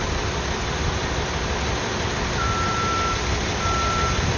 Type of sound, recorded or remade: recorded